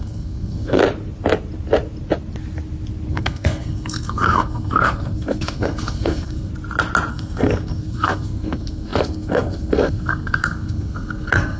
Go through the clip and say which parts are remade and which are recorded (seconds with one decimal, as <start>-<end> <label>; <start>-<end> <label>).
0.0-0.8 remade; 0.8-3.1 recorded; 3.1-6.5 remade; 6.5-7.1 recorded; 7.1-11.6 remade